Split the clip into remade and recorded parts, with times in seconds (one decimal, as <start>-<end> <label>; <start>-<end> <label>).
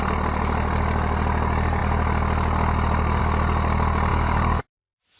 0.0-4.1 recorded; 4.1-4.6 remade; 4.6-5.2 recorded